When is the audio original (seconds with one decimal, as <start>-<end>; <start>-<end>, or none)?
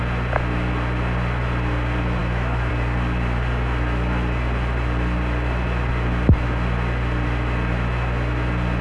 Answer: 0.0-2.2; 2.7-8.8